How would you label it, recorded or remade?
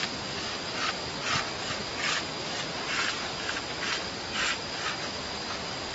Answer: recorded